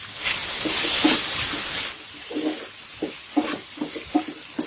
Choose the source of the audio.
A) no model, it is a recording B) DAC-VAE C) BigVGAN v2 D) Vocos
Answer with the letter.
A